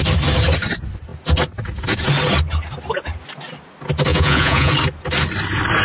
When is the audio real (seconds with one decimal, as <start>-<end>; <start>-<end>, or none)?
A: 0.0-4.1; 4.7-5.8